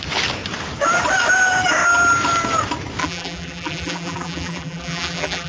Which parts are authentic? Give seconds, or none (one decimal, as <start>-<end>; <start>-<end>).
0.0-3.0